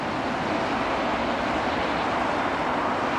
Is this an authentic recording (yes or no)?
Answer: yes